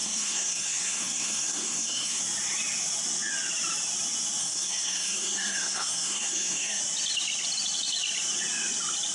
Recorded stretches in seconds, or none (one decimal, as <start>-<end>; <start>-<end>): 2.2-4.4; 6.8-9.1